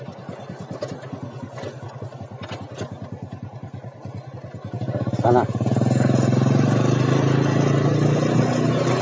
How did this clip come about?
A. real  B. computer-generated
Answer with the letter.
A